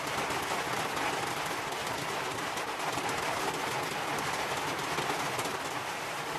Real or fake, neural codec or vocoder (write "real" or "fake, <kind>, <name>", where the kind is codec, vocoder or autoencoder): real